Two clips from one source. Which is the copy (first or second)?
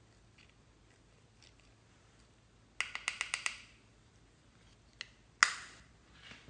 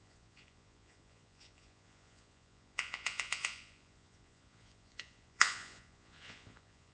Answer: second